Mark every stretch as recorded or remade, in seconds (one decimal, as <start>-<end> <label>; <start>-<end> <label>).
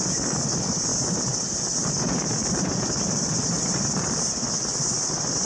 0.0-2.4 recorded; 2.4-4.3 remade; 4.3-5.4 recorded